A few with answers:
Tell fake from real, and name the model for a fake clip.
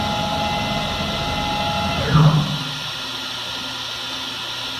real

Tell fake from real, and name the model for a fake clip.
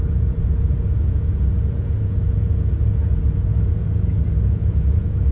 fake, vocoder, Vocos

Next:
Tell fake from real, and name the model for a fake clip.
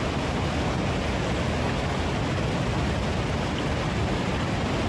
real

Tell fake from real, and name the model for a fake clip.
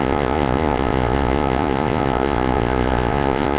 fake, vocoder, Vocos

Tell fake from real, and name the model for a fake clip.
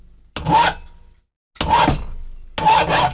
real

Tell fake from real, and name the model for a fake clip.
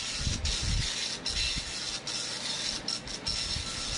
real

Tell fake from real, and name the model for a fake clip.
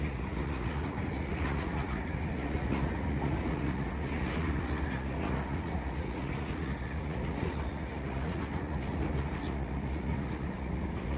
fake, vocoder, Vocos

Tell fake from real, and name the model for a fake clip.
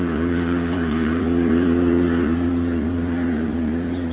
fake, vocoder, Vocos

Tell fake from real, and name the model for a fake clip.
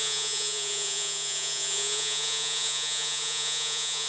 fake, vocoder, Vocos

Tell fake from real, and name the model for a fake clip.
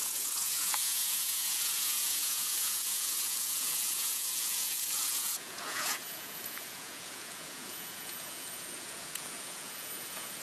fake, vocoder, Vocos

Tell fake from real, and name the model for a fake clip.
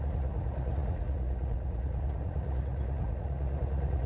fake, vocoder, Vocos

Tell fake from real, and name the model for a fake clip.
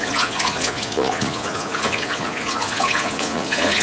fake, vocoder, Vocos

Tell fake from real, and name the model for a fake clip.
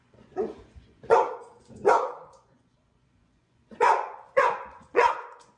fake, vocoder, Vocos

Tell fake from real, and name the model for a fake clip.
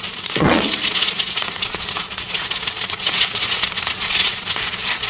fake, vocoder, Vocos